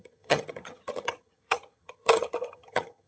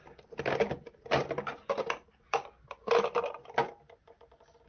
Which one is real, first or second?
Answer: second